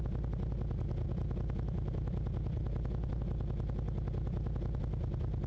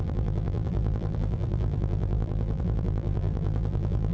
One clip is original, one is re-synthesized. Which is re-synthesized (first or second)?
second